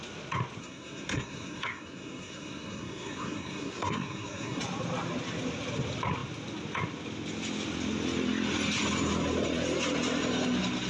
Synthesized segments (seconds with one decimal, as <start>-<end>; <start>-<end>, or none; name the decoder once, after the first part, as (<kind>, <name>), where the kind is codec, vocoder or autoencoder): 0.6-4.6 (codec, SNAC)